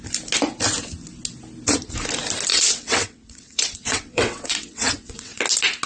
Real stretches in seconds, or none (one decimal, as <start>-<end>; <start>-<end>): 0.0-2.5; 5.4-5.9